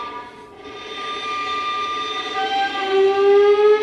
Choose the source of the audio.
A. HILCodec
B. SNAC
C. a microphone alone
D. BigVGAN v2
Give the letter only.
C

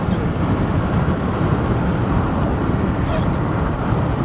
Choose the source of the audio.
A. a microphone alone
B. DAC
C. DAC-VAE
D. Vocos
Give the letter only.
A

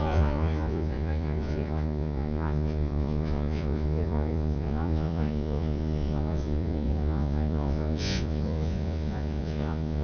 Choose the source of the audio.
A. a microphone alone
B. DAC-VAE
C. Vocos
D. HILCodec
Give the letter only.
C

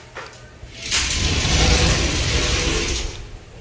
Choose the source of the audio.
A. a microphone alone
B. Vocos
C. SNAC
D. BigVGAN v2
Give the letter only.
D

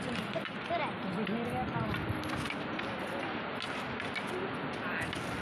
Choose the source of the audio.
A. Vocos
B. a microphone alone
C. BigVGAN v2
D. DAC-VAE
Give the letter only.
B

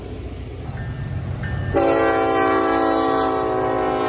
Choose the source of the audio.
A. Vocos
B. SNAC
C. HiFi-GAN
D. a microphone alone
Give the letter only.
D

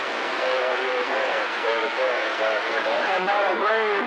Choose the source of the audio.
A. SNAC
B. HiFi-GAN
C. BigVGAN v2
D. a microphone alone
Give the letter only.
A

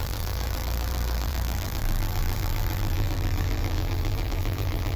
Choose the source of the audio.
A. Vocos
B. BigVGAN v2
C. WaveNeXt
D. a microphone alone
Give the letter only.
B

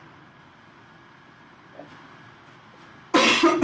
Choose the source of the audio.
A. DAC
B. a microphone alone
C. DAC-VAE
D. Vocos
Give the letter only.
B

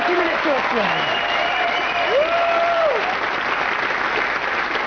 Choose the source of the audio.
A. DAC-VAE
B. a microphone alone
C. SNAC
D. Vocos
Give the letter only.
B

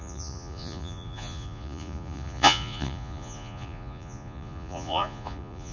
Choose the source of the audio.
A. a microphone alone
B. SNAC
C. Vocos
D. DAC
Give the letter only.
C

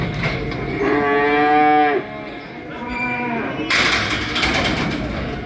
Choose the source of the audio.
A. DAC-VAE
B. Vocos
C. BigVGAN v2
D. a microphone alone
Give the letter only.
D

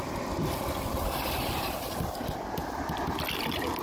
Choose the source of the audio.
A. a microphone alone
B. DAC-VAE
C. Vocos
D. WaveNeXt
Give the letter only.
A